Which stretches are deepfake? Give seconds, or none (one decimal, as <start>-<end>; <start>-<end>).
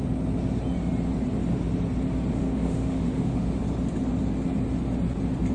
2.3-3.6